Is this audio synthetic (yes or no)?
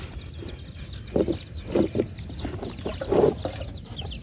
no